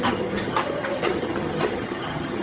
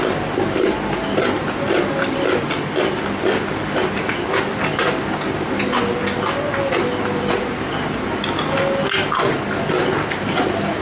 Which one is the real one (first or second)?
second